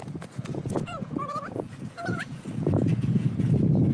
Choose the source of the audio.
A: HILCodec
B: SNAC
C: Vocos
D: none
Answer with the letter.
C